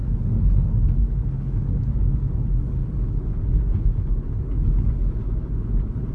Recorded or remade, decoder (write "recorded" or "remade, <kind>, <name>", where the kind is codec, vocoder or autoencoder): remade, codec, HILCodec